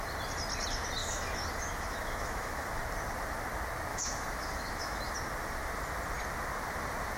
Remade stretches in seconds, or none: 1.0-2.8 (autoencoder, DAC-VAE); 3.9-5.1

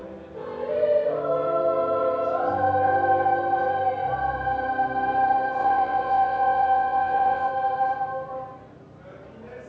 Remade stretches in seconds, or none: 5.6-7.5 (vocoder, WaveNeXt)

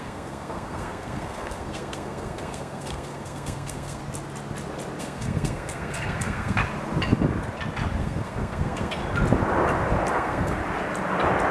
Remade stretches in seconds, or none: 0.0-4.0 (codec, SNAC); 5.0-6.6; 8.0-9.0; 10.1-10.6

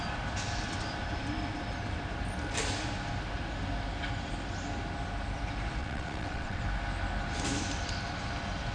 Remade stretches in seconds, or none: 5.8-6.6 (vocoder, WaveNeXt)

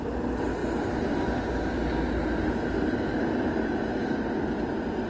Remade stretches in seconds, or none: none

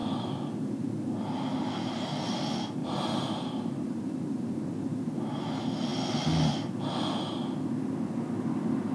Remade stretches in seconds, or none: 0.0-0.9 (vocoder, BigVGAN v2); 2.8-4.1